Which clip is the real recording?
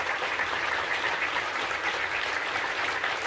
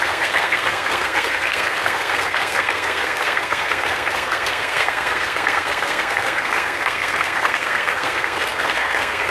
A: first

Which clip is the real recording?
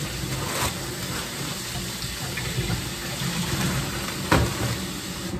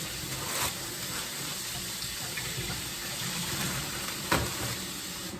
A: first